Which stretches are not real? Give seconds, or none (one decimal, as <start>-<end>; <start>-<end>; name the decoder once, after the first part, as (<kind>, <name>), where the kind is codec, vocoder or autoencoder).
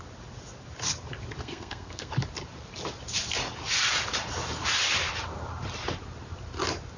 1.4-2.1 (codec, SNAC)